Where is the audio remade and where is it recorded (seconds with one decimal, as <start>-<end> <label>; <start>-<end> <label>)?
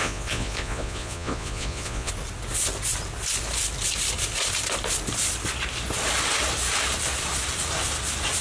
0.0-2.1 remade; 2.1-8.4 recorded